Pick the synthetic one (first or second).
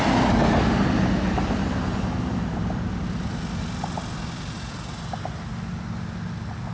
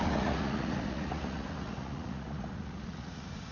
second